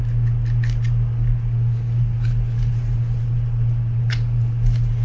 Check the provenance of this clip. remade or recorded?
recorded